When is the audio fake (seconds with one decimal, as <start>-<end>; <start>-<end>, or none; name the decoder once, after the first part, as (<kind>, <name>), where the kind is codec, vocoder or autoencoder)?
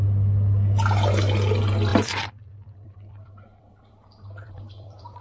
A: 1.9-5.2 (vocoder, BigVGAN v2)